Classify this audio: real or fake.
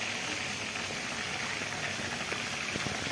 real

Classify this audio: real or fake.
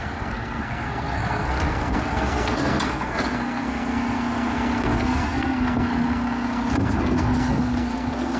fake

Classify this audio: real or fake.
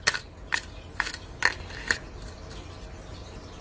real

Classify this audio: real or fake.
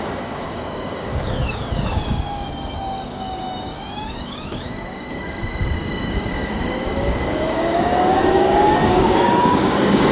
fake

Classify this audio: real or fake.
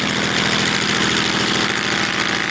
real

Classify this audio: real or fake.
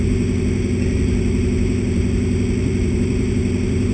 fake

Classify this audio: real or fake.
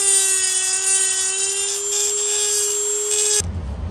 real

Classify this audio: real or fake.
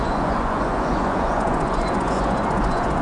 fake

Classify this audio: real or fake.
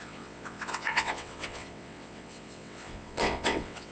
fake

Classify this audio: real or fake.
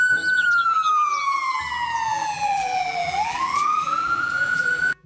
fake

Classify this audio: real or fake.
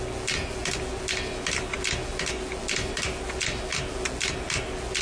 real